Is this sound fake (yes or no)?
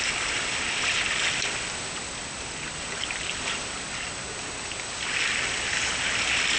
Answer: no